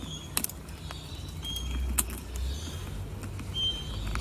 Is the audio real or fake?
real